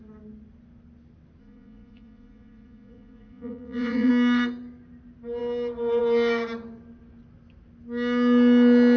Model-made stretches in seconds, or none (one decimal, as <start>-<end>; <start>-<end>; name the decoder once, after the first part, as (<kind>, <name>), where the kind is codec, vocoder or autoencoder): 1.4-4.1 (vocoder, Vocos)